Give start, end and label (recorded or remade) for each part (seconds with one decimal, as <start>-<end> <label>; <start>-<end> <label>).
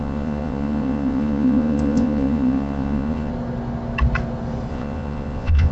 0.0-3.3 remade; 3.3-4.7 recorded; 4.7-5.7 remade